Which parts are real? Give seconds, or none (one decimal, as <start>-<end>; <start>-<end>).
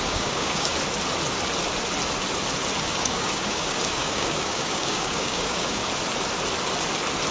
0.7-2.8; 5.8-7.3